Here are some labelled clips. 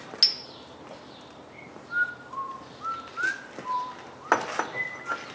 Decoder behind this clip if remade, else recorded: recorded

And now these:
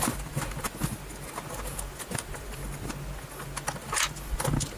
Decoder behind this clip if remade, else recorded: recorded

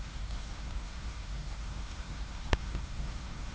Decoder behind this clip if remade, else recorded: remade, codec, SNAC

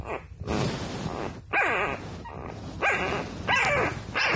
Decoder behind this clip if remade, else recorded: recorded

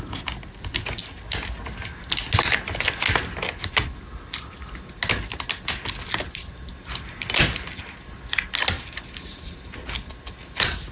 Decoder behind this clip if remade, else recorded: recorded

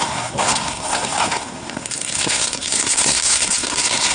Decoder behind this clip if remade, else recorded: remade, codec, SNAC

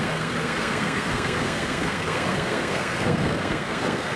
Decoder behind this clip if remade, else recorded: remade, codec, SNAC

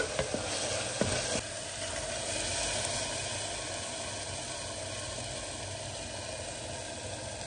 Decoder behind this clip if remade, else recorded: recorded